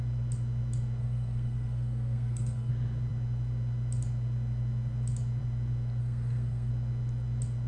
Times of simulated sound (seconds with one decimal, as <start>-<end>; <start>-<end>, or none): 1.0-2.7; 6.0-6.7